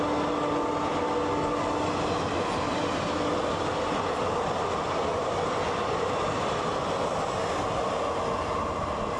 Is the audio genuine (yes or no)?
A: yes